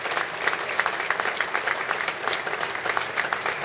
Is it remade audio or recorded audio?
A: recorded